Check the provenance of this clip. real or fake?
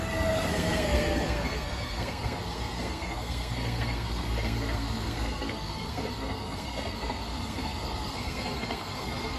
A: fake